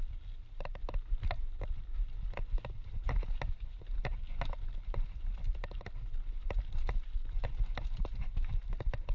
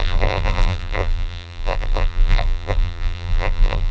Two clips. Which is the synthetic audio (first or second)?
second